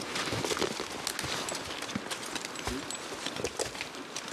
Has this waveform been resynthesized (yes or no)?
no